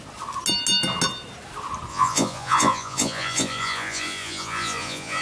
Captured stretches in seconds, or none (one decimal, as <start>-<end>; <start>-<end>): 0.0-1.9